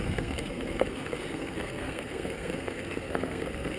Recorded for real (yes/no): no